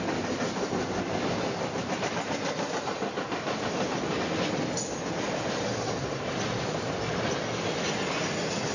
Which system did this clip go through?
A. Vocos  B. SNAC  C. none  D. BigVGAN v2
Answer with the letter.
C